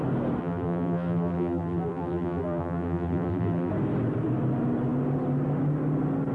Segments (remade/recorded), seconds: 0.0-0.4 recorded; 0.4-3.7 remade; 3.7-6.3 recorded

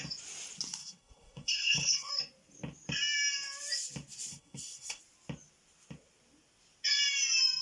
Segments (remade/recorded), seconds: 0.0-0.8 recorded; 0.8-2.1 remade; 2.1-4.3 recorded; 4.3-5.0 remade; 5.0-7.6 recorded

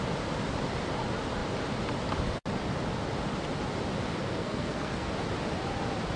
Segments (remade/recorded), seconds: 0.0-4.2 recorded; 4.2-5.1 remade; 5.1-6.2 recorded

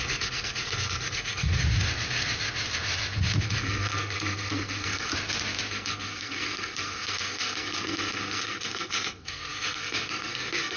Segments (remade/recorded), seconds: 0.0-1.6 remade; 1.6-3.4 recorded; 3.4-5.1 remade; 5.1-5.7 recorded; 5.7-10.8 remade